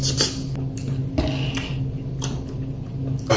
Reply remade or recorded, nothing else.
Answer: recorded